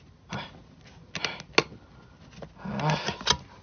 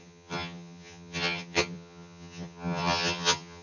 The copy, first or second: second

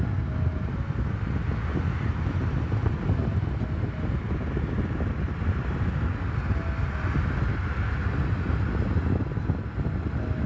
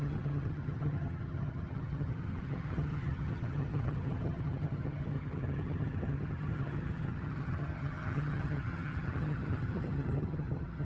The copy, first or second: second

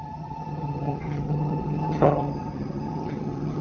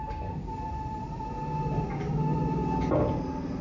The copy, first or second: first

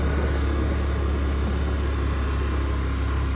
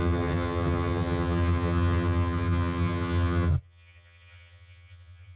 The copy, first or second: second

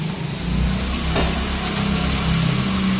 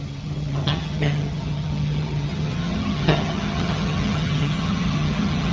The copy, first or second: second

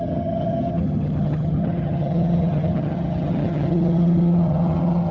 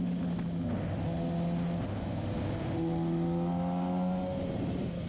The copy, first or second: first